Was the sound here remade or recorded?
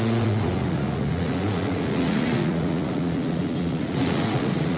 remade